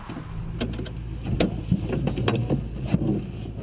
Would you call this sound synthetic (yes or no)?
no